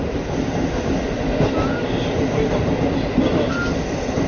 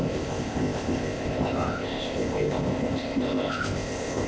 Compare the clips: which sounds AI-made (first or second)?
second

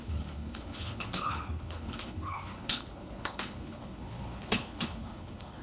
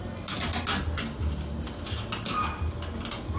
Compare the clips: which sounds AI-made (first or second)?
first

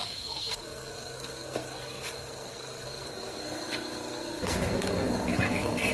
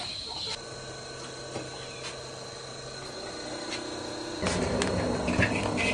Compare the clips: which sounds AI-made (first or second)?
first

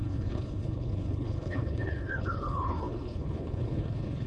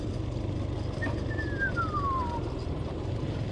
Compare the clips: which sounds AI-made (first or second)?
first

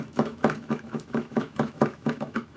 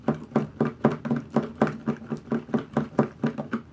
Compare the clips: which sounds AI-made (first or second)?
first